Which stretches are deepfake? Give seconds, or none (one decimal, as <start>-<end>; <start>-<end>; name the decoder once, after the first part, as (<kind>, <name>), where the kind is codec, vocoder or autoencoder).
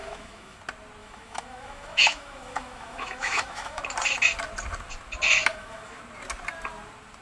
0.0-0.6 (autoencoder, DAC-VAE); 1.0-3.8; 5.5-6.0